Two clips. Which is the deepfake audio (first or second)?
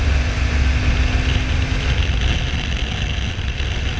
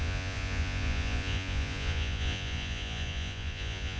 second